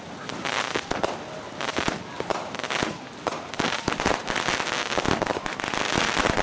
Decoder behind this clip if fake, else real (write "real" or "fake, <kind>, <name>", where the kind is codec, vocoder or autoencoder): real